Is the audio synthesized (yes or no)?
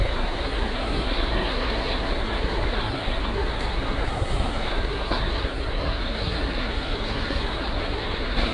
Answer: yes